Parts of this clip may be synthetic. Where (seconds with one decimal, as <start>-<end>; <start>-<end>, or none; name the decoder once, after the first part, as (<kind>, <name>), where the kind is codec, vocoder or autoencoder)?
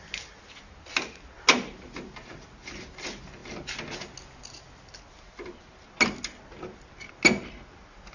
none